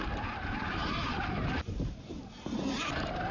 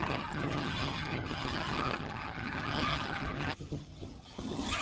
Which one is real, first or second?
first